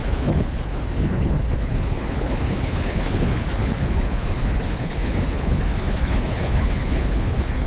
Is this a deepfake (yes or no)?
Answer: yes